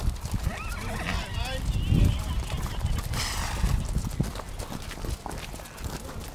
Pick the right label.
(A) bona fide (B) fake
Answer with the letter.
A